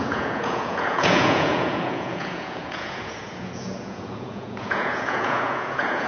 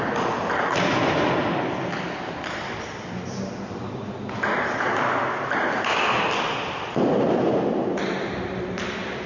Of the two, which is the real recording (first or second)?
second